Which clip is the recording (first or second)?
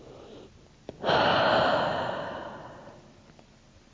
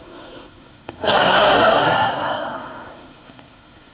first